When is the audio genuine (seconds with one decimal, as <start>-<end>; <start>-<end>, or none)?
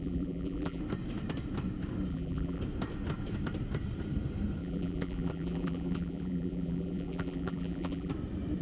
0.8-2.1; 2.6-4.6; 8.1-8.6